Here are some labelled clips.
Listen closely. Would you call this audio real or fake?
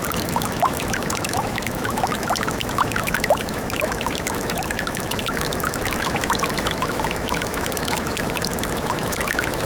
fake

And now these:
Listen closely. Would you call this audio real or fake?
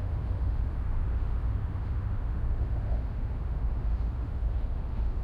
fake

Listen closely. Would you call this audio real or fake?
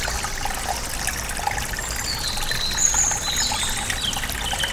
real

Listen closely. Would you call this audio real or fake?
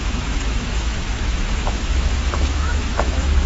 fake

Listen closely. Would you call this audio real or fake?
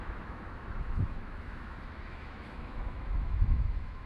fake